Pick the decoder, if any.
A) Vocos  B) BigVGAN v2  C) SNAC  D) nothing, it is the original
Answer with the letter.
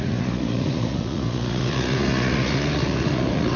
A